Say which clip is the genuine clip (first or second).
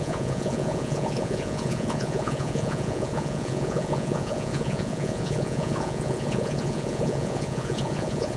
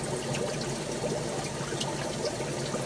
second